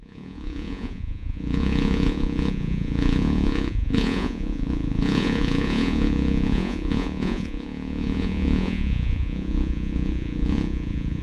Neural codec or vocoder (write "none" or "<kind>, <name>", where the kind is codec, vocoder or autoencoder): vocoder, Vocos